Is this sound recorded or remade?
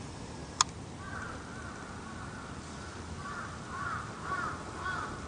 recorded